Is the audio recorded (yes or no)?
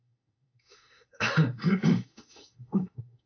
no